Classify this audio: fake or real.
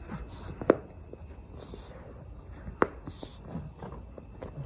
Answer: real